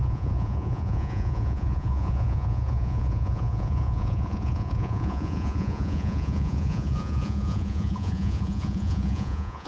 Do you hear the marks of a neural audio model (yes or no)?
yes